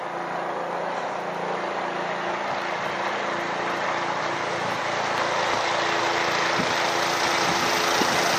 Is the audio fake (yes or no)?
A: no